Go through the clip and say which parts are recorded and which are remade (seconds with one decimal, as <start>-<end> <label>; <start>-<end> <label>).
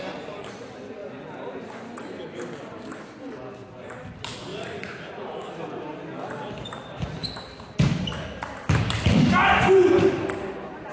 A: 0.0-4.5 recorded; 4.5-5.6 remade; 5.6-10.9 recorded